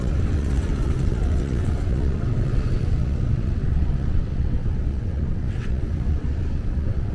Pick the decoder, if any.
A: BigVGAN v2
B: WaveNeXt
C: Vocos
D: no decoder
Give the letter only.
B